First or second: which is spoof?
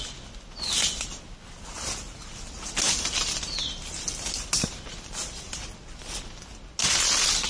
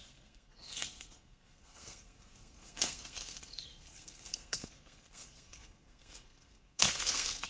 second